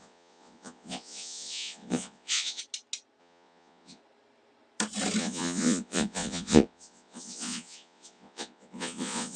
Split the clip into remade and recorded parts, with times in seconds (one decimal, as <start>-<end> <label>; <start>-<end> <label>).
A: 0.0-2.6 remade; 2.6-3.2 recorded; 3.2-4.0 remade; 4.0-5.2 recorded; 5.2-9.4 remade